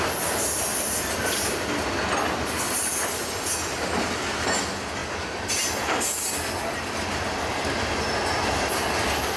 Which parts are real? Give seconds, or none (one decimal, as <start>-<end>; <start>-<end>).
0.0-9.4